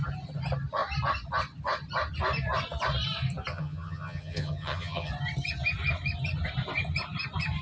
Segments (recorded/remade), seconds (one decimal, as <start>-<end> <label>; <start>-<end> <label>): 0.0-3.5 recorded; 3.5-5.1 remade; 5.1-7.6 recorded